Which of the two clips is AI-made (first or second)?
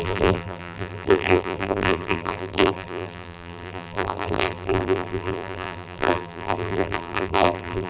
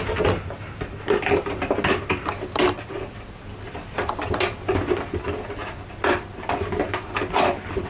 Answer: first